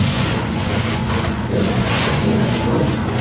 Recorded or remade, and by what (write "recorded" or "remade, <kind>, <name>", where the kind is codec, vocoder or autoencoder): remade, vocoder, Vocos